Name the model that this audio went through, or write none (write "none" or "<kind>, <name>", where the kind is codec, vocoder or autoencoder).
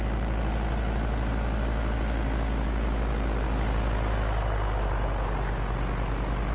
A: none